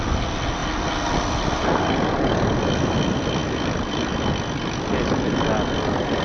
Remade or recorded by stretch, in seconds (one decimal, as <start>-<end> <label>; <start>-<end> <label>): 0.0-6.2 recorded